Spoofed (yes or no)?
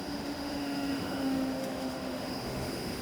yes